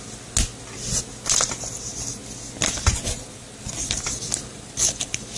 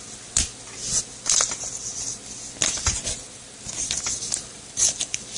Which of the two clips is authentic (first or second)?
first